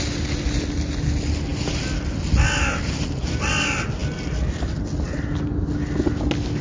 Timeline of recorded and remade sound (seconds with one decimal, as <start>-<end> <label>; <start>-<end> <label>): 0.0-6.6 recorded